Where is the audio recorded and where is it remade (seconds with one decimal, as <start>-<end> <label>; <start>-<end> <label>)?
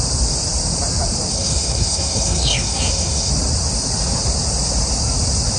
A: 0.0-1.3 recorded; 1.3-3.3 remade; 3.3-5.6 recorded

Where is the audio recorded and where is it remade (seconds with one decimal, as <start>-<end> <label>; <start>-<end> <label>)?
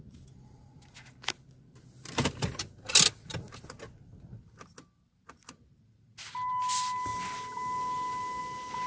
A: 0.0-8.9 recorded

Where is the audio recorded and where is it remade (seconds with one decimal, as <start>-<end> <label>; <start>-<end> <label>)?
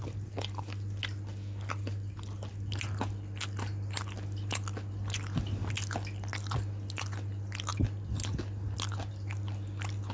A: 0.0-10.1 recorded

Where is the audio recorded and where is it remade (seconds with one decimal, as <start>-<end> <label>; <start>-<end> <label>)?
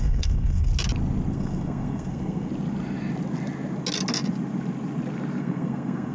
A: 0.0-0.7 remade; 0.7-1.3 recorded; 1.3-2.5 remade; 2.5-5.4 recorded; 5.4-6.1 remade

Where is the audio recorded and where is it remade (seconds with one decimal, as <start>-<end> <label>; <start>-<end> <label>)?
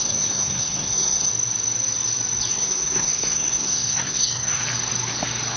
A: 0.0-1.3 remade; 1.3-2.5 recorded; 2.5-4.6 remade; 4.6-5.6 recorded